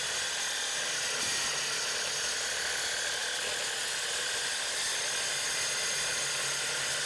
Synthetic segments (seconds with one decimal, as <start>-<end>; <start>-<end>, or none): none